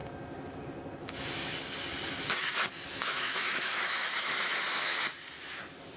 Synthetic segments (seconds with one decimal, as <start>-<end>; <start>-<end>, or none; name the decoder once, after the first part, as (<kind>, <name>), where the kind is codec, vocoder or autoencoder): 1.0-1.6 (autoencoder, DAC-VAE); 2.9-5.0